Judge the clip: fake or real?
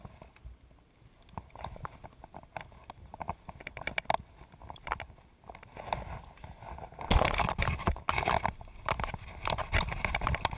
real